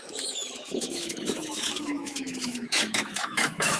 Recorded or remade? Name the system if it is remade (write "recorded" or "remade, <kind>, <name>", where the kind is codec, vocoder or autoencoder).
remade, autoencoder, DAC-VAE